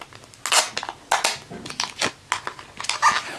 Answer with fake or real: real